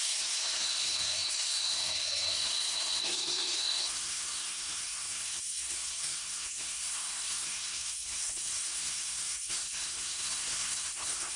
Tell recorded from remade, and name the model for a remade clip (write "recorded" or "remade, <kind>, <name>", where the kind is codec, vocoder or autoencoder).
remade, codec, SNAC